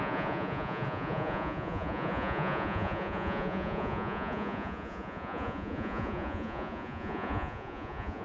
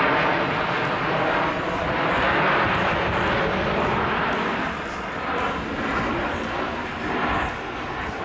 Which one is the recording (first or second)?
second